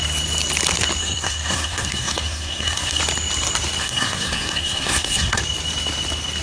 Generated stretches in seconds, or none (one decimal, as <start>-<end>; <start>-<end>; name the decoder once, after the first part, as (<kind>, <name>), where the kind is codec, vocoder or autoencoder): 1.0-3.0 (codec, SNAC); 3.8-5.4